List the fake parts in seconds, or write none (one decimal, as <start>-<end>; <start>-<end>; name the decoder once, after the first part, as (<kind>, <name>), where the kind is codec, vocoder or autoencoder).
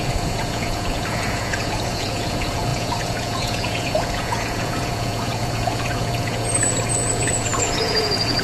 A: 0.0-8.4 (vocoder, Vocos)